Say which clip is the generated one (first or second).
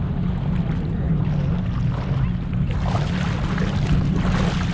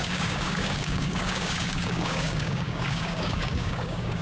second